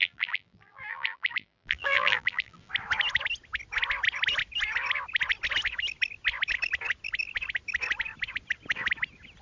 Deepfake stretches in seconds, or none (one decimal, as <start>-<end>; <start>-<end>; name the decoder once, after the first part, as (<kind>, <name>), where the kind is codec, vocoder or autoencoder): 0.0-2.7 (vocoder, BigVGAN v2)